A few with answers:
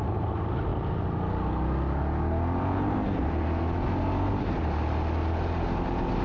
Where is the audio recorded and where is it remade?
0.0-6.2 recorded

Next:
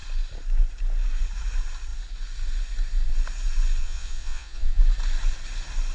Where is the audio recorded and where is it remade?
0.0-3.8 recorded; 3.8-4.8 remade; 4.8-5.9 recorded